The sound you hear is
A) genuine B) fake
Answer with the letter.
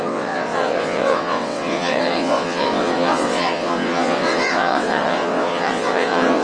B